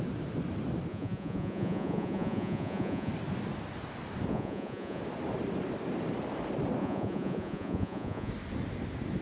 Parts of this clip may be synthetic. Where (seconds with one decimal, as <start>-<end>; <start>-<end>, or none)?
0.9-3.1; 4.3-5.0; 6.8-8.3